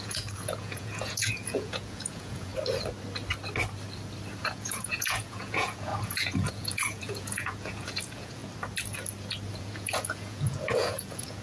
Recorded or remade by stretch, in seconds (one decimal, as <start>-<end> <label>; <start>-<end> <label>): 0.0-2.5 remade; 2.5-4.4 recorded; 4.4-8.4 remade; 8.4-9.6 recorded; 9.6-11.4 remade